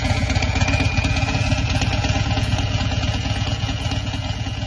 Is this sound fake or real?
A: fake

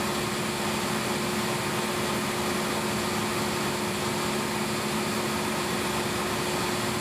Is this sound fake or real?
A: real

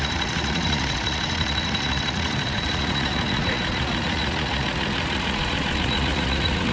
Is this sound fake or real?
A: fake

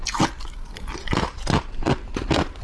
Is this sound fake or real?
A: fake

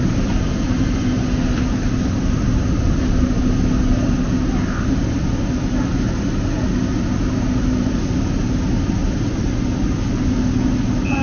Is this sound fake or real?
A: real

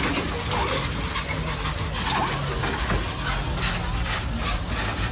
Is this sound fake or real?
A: real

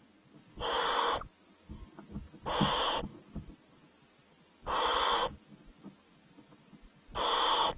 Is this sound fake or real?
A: real